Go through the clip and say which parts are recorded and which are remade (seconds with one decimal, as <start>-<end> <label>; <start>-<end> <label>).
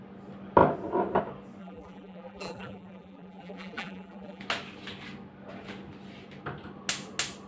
0.0-1.6 recorded; 1.6-4.4 remade; 4.4-7.5 recorded